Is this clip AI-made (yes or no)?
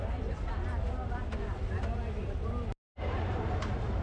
no